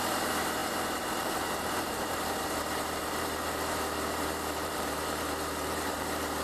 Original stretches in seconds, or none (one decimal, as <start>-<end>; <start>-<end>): none